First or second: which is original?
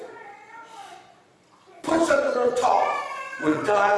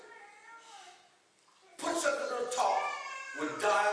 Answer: second